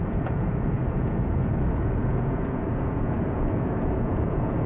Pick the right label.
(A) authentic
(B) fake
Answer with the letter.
B